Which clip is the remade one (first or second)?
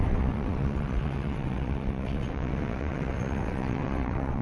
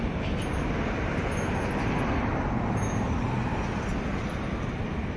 first